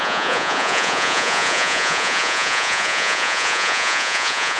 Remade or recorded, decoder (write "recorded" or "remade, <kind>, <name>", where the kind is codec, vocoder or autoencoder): remade, vocoder, Vocos